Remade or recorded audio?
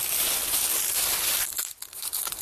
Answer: remade